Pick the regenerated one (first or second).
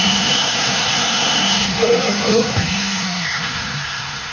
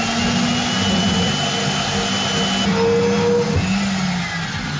first